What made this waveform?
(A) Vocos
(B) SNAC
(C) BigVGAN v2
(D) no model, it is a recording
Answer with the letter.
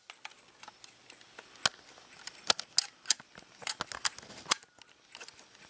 D